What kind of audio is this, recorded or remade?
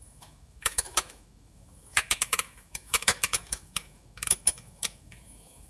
remade